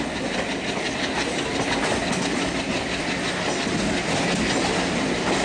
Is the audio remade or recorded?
recorded